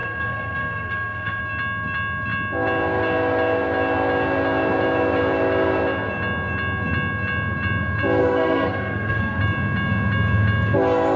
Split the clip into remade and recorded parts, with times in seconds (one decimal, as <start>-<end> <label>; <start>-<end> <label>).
0.0-1.4 remade; 1.4-8.2 recorded; 8.2-9.4 remade; 9.4-11.2 recorded